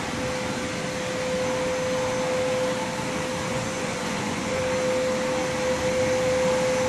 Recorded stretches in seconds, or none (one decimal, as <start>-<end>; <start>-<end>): 0.0-3.5; 4.6-6.9